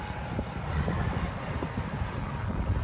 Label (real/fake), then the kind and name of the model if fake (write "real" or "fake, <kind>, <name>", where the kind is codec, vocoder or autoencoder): real